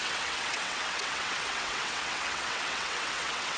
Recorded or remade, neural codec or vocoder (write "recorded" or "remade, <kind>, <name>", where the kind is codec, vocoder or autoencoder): remade, vocoder, WaveNeXt